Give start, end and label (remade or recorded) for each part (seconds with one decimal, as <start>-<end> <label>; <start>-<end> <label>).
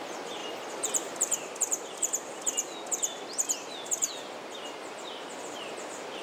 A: 0.0-0.4 recorded; 0.4-4.1 remade; 4.1-6.2 recorded